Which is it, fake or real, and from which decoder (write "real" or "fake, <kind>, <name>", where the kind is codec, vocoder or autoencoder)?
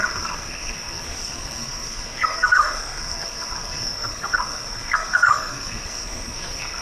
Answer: fake, codec, SNAC